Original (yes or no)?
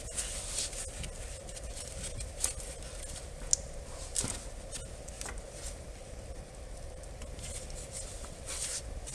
yes